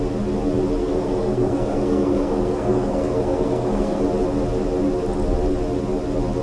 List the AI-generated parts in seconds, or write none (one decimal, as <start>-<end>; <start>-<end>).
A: 0.8-4.0